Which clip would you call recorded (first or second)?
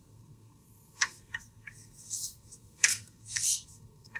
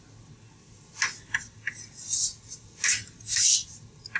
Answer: second